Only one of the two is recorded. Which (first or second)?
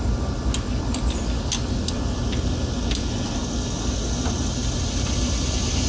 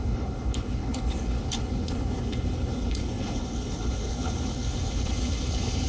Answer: first